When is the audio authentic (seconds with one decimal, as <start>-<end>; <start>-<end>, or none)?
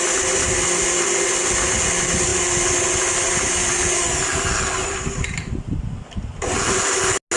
0.0-7.4